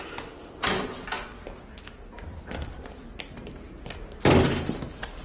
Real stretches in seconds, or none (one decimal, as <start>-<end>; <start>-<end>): 0.0-5.2